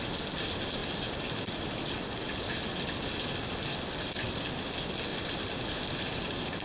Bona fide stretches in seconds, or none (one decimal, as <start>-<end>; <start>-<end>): 0.0-5.1; 5.7-6.6